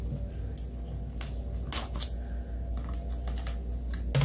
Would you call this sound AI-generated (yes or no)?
no